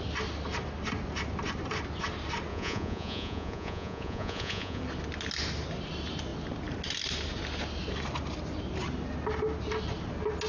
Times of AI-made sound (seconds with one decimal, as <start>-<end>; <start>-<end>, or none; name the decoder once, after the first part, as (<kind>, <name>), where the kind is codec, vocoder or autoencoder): 2.5-4.8 (vocoder, Vocos)